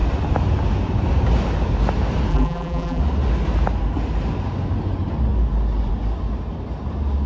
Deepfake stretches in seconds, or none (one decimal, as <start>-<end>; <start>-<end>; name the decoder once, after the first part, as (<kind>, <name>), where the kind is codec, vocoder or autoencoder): 2.3-3.0 (vocoder, BigVGAN v2)